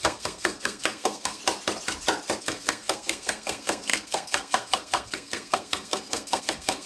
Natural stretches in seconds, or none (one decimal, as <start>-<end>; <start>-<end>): 1.4-2.4